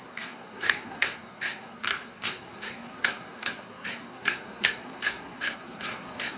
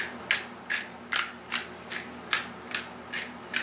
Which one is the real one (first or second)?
second